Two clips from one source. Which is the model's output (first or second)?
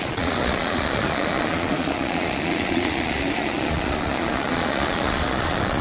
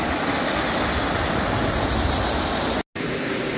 first